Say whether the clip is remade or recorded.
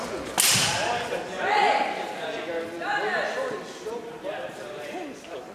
recorded